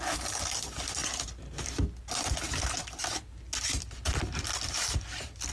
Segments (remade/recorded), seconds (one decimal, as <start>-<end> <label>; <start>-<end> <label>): 0.0-5.5 recorded